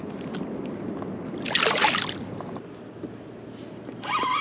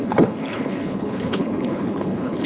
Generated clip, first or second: second